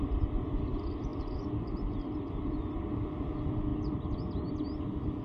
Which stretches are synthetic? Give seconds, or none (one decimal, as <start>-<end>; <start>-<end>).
none